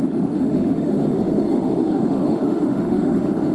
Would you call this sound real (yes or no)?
no